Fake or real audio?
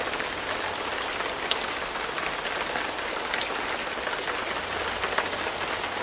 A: real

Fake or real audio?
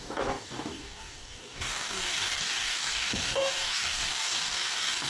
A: fake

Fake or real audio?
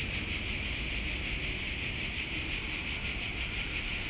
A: real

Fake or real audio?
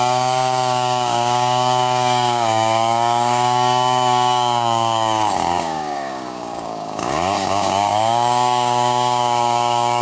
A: fake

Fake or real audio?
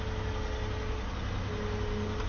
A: real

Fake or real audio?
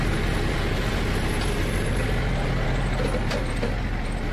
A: real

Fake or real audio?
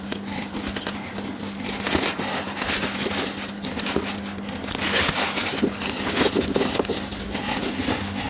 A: real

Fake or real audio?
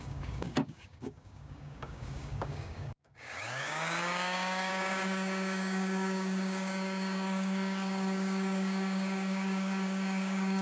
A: fake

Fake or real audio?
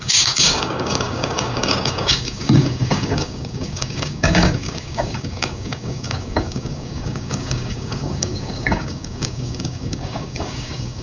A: fake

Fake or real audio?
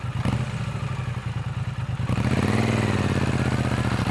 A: real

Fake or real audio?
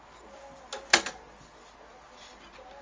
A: real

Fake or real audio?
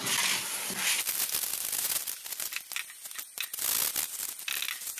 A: real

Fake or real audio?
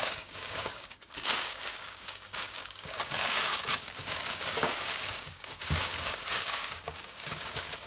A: fake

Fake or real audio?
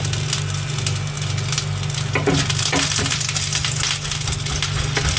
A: real